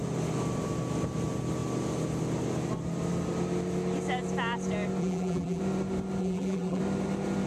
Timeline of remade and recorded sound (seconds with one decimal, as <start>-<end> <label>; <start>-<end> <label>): 0.0-5.0 recorded; 5.0-5.6 remade; 5.6-6.2 recorded; 6.2-6.8 remade; 6.8-7.5 recorded